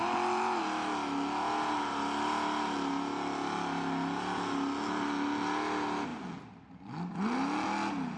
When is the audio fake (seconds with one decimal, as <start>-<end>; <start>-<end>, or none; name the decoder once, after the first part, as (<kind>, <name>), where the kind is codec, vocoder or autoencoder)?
none